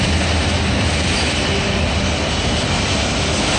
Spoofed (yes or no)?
no